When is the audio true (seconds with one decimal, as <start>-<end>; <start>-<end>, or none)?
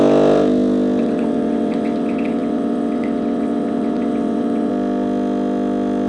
0.0-1.0; 4.7-6.1